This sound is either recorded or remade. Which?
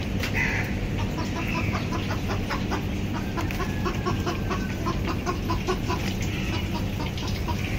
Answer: recorded